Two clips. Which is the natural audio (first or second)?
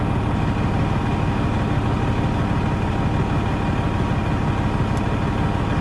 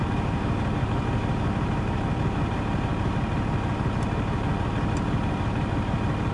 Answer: first